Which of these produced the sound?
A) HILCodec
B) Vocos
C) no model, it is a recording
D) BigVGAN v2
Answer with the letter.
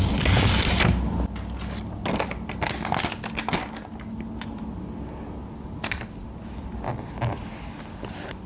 C